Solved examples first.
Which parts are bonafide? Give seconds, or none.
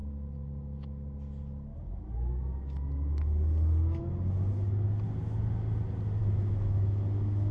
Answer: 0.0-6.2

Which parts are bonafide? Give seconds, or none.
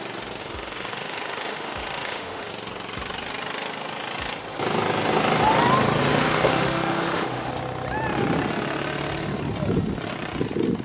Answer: 0.0-0.4; 2.5-6.0; 7.5-10.8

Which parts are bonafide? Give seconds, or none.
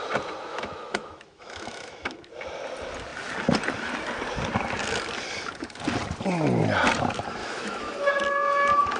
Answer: 0.0-0.5; 2.3-7.4; 8.1-9.0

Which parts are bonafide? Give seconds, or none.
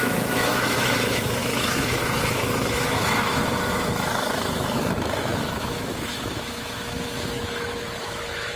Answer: none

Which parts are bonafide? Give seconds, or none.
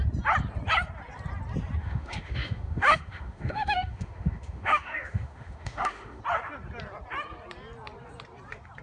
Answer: 0.0-1.8; 6.2-8.8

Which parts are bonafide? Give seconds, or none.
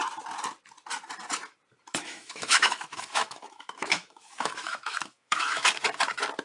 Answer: 0.0-1.9; 5.7-6.4